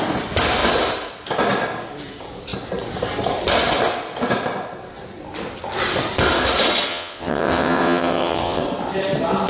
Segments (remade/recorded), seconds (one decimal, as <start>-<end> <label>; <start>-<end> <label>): 0.0-6.9 recorded; 6.9-8.6 remade; 8.6-9.5 recorded